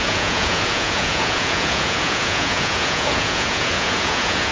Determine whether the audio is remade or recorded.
remade